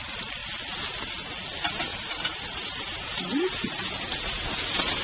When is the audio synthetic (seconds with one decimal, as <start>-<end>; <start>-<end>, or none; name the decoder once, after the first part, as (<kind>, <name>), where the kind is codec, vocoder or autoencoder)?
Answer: 1.9-5.0 (vocoder, Vocos)